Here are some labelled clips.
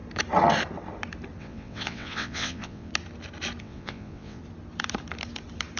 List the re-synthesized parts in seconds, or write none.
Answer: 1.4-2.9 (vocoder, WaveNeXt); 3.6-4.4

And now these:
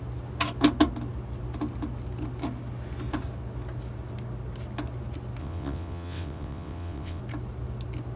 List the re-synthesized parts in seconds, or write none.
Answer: 5.4-7.2 (vocoder, WaveNeXt)

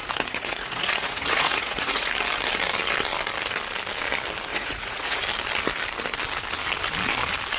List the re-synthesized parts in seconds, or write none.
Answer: 0.0-2.1 (vocoder, Vocos); 4.5-5.2

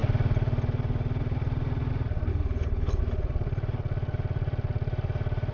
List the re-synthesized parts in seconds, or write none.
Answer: 2.3-3.0 (codec, HILCodec)